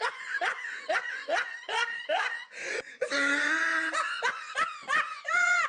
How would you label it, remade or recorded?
remade